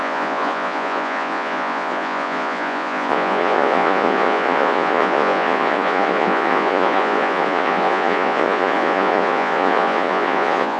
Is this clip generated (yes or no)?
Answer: yes